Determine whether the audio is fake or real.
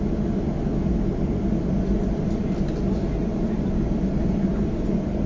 real